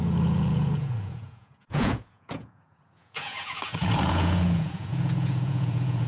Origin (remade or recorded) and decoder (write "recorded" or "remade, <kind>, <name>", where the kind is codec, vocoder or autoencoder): remade, vocoder, Vocos